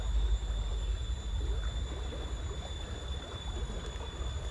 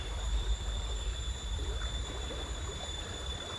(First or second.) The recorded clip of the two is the first